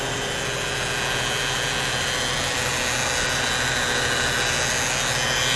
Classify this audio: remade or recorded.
recorded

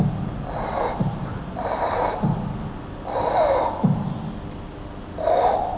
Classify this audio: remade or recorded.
recorded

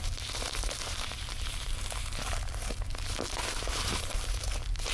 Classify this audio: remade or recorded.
remade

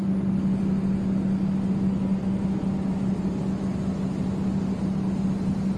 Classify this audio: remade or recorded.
recorded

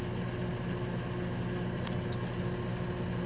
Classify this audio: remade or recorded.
recorded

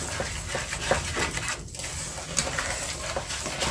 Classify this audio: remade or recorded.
recorded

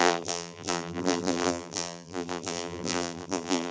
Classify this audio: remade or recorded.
remade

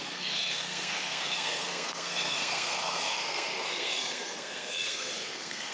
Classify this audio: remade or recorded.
remade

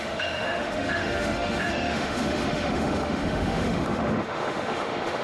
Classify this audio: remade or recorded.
remade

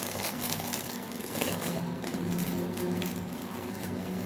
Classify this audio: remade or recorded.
remade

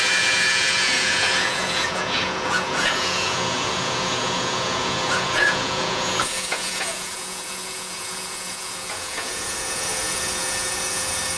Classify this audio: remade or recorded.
remade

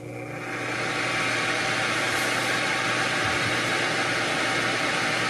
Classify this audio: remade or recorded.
recorded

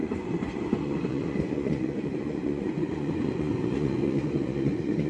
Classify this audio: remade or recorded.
remade